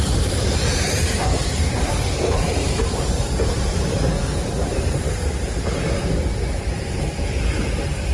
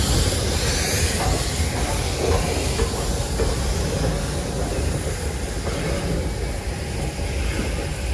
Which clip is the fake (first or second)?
first